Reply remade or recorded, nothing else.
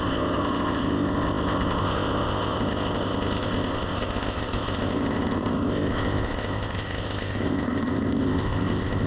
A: remade